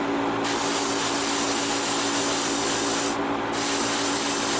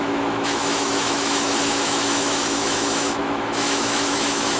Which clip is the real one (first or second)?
first